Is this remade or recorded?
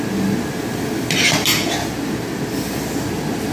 recorded